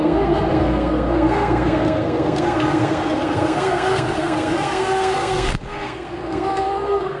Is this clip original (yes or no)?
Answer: no